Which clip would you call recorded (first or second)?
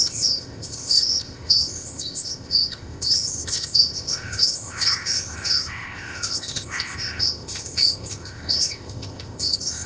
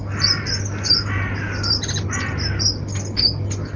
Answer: second